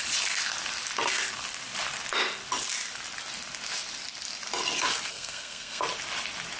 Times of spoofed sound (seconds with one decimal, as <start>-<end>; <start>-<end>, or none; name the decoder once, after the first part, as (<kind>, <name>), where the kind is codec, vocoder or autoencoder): 5.1-5.8 (codec, SNAC)